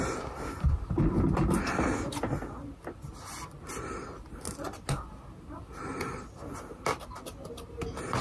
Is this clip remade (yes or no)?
no